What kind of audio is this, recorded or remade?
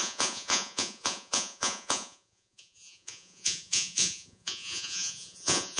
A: remade